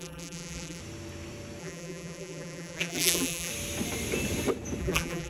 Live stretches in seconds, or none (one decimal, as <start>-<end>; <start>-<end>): 0.8-1.6; 3.5-4.8